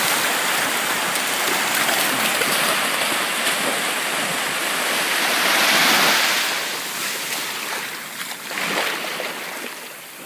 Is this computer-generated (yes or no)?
no